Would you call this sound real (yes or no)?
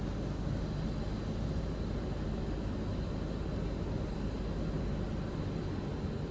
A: yes